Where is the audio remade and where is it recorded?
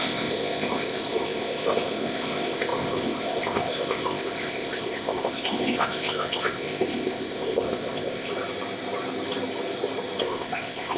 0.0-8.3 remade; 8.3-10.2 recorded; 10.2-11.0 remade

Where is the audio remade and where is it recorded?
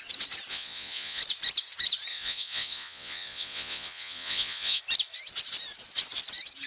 0.0-0.5 recorded; 0.5-1.2 remade; 1.2-2.1 recorded; 2.1-4.8 remade; 4.8-6.7 recorded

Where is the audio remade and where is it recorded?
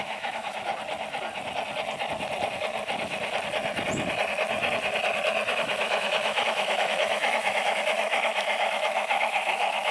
0.0-0.7 remade; 0.7-5.5 recorded; 5.5-9.9 remade